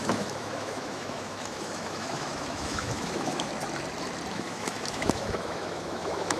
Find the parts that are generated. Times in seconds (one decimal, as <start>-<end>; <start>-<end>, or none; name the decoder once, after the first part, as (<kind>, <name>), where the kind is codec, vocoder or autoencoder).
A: 0.0-3.5 (autoencoder, DAC-VAE); 4.3-6.4

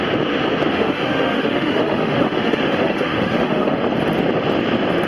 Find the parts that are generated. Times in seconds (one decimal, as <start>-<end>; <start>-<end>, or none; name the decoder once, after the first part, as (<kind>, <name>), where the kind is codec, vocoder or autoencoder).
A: 0.7-3.8 (autoencoder, DAC-VAE)

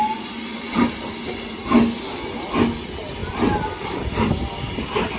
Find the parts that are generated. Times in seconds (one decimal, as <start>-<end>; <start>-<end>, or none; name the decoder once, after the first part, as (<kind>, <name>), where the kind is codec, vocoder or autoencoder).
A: none

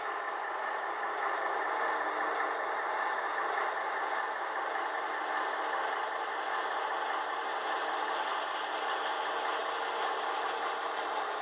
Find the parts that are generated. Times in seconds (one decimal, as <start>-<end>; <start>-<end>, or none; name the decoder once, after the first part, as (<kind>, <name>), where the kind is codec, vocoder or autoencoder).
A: none